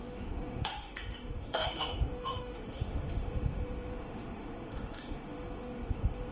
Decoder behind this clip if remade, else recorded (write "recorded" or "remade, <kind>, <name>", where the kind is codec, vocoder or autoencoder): remade, autoencoder, DAC-VAE